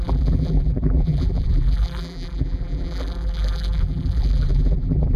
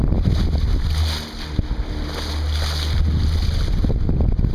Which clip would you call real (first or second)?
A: second